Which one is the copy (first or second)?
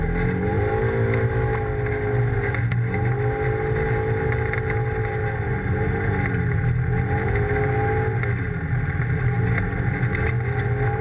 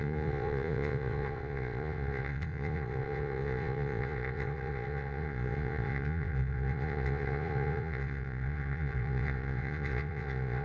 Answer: second